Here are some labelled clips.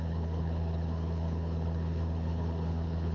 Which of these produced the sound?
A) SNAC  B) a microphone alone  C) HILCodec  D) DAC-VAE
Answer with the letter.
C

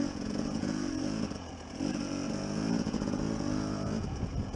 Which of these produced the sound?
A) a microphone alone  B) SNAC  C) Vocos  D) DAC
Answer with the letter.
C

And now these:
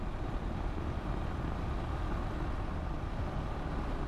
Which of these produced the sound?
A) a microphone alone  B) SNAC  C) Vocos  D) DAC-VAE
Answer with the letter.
A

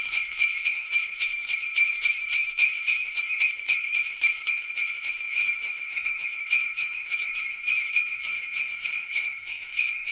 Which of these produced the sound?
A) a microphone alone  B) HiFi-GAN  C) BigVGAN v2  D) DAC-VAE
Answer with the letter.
D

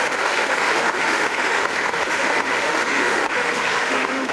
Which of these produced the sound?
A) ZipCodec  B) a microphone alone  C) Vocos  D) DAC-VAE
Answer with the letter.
D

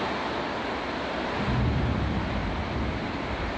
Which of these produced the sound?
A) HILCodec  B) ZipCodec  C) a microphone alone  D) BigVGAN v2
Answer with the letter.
C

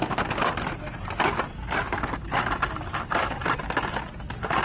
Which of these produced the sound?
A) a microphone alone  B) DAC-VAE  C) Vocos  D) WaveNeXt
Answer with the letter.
A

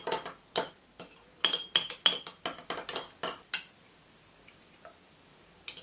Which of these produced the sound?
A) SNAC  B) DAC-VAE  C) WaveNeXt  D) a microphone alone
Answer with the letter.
D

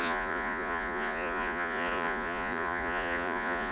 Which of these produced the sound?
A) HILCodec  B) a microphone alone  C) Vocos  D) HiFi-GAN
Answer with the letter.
C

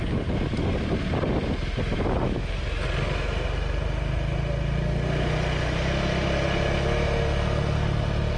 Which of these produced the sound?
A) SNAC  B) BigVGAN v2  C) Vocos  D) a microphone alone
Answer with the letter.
D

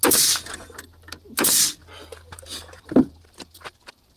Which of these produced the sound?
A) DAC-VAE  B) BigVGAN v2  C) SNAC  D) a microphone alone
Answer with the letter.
D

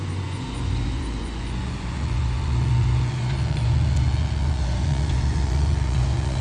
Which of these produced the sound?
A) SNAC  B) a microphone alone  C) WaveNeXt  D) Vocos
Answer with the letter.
D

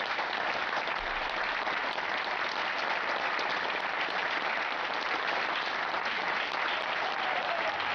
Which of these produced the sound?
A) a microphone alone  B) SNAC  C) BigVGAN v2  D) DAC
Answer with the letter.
A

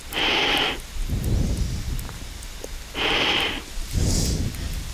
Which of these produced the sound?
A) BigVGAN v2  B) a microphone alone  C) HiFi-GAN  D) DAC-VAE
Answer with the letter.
B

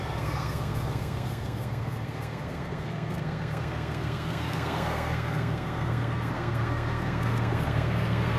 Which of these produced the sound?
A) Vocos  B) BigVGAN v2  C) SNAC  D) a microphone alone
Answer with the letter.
C